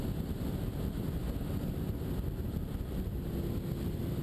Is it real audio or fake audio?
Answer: real